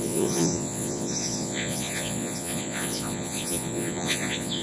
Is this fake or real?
fake